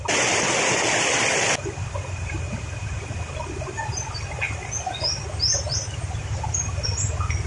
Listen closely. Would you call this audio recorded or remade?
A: recorded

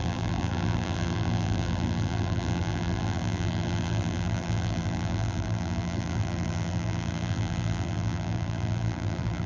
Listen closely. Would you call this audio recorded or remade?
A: remade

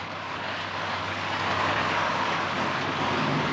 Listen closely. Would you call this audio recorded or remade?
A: remade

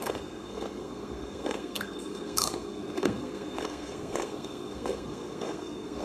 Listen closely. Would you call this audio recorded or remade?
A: remade